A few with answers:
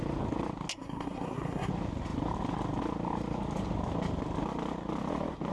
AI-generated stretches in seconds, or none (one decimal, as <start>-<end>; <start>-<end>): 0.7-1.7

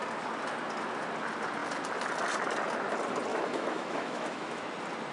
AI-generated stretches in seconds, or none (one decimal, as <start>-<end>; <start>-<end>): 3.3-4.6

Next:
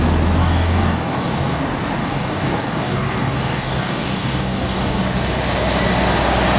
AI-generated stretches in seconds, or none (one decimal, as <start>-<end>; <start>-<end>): 0.4-1.6; 2.0-5.0

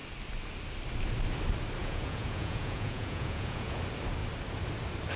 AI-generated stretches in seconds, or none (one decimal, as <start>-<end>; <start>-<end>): 1.8-3.8

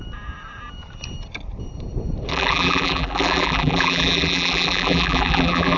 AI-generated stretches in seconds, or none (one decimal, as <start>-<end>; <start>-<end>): 2.3-5.8